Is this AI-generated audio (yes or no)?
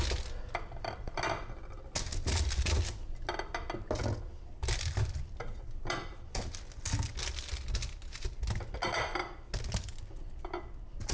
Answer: no